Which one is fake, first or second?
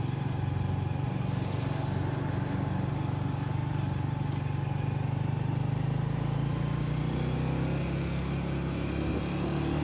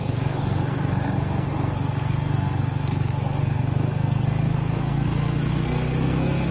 second